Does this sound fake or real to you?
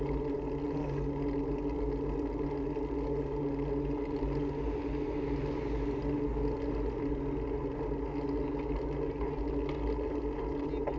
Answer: real